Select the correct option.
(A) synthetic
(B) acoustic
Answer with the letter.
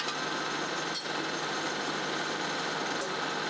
B